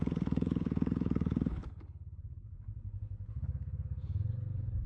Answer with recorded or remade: remade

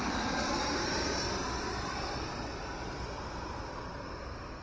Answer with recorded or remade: recorded